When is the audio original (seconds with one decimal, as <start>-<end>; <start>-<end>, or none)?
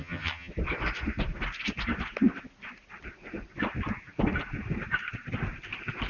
0.5-6.1